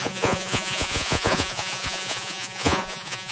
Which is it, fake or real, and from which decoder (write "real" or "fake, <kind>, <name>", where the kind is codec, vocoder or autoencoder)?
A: fake, vocoder, Vocos